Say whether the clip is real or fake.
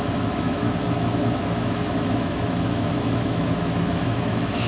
fake